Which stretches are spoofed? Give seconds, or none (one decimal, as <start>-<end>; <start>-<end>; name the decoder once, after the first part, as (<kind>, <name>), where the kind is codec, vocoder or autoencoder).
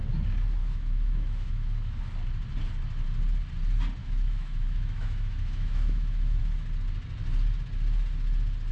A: 0.6-2.0 (autoencoder, DAC-VAE); 4.0-6.4